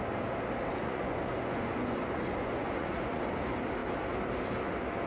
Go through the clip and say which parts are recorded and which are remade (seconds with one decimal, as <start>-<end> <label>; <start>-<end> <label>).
0.0-0.7 recorded; 0.7-3.2 remade; 3.2-5.1 recorded